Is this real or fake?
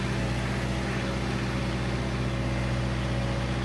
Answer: real